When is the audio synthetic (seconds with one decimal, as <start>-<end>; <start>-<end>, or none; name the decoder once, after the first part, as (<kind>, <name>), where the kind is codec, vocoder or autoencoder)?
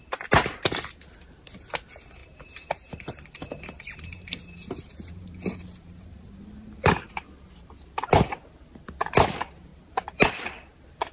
2.2-7.0 (vocoder, BigVGAN v2); 9.7-10.6